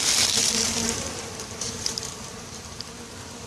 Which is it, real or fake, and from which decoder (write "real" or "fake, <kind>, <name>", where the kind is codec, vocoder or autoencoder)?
fake, vocoder, BigVGAN v2